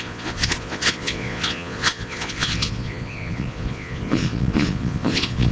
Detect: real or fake fake